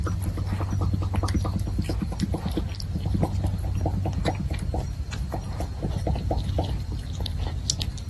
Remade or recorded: recorded